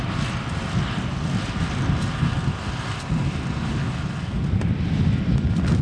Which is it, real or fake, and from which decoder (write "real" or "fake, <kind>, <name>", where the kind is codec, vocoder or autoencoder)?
real